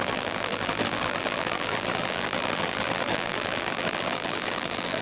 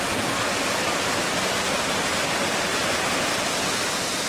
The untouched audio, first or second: second